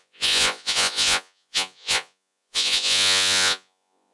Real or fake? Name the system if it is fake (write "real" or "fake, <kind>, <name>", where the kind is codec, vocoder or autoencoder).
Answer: fake, vocoder, Vocos